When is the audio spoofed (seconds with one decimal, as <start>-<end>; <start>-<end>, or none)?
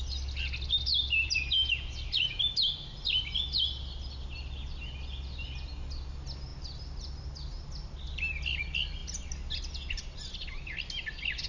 none